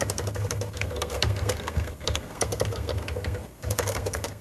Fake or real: fake